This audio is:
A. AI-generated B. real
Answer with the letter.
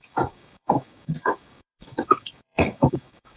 A